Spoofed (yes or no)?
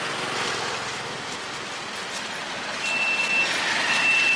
no